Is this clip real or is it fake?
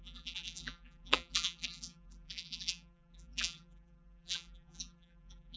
fake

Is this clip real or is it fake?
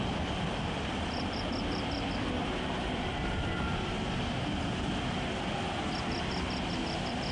fake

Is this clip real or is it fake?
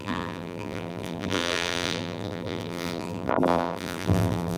fake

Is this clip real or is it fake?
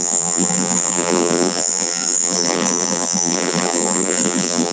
fake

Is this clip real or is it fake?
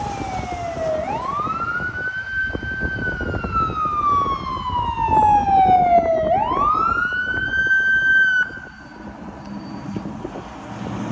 real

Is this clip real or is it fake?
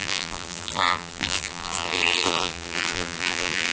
fake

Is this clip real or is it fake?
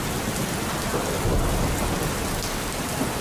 real